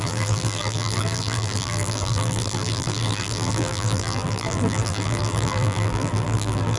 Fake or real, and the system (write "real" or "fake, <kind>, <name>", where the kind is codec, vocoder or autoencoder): fake, vocoder, BigVGAN v2